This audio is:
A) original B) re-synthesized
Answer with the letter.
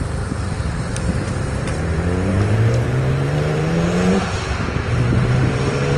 B